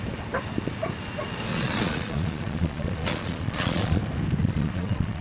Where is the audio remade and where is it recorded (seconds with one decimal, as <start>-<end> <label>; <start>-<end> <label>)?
0.0-1.5 recorded; 1.5-4.0 remade; 4.0-4.4 recorded; 4.4-5.2 remade